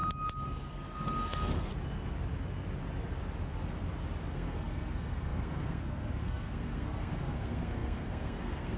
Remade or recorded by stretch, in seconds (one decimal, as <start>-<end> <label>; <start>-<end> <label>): 0.0-0.7 recorded; 0.7-1.7 remade; 1.7-4.3 recorded; 4.3-8.8 remade